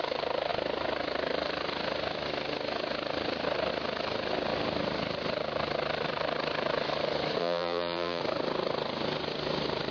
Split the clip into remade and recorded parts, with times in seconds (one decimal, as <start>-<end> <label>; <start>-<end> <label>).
0.0-7.4 recorded; 7.4-8.2 remade; 8.2-9.9 recorded